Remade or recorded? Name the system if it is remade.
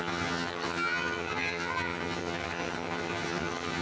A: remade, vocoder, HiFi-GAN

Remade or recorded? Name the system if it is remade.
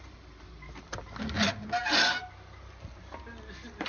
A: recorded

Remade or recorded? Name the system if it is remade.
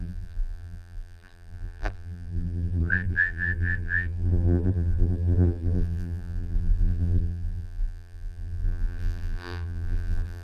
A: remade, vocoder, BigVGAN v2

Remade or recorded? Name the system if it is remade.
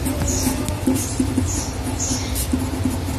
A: recorded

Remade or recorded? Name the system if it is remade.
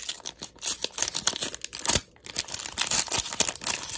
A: recorded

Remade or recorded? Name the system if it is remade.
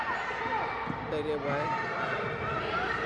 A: recorded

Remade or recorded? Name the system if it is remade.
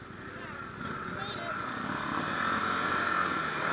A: recorded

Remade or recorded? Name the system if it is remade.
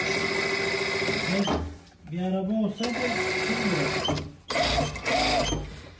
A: recorded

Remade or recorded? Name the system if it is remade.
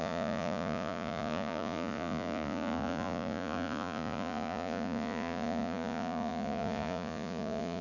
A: remade, vocoder, Vocos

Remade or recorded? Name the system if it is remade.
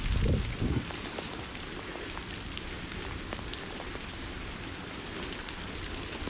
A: remade, vocoder, BigVGAN v2